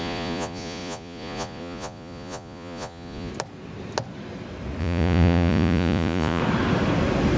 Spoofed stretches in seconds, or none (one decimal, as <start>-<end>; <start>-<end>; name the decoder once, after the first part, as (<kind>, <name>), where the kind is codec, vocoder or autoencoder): 0.0-3.3 (vocoder, Vocos); 4.8-6.4